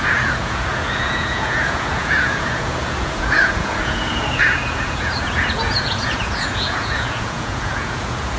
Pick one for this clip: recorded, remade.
remade